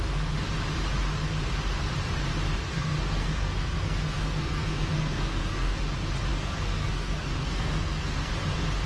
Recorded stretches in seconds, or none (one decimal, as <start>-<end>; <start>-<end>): 0.0-2.5; 5.8-6.3; 8.3-8.9